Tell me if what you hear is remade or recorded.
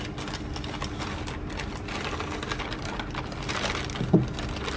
recorded